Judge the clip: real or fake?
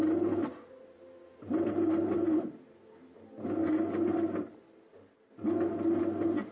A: real